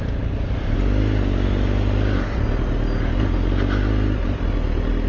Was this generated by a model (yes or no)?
no